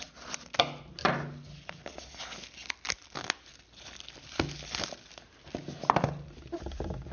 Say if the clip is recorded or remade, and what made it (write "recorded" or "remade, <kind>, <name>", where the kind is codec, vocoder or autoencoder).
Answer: recorded